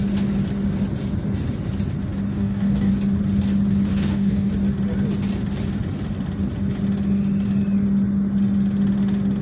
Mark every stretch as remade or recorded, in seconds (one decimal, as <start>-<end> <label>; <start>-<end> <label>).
0.0-2.3 recorded; 2.3-2.9 remade; 2.9-3.9 recorded; 3.9-4.5 remade; 4.5-9.4 recorded